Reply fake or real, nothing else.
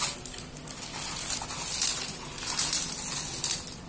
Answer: real